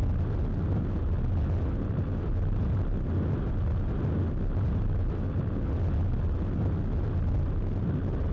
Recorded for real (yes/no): yes